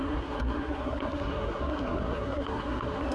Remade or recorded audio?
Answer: remade